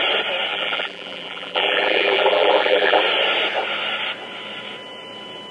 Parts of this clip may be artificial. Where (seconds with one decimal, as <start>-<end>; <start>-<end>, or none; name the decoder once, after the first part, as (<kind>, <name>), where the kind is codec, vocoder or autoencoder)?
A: 0.5-3.0 (vocoder, BigVGAN v2)